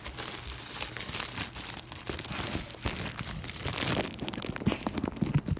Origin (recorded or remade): recorded